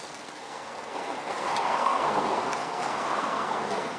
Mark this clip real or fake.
fake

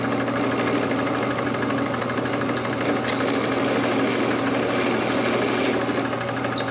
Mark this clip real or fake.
real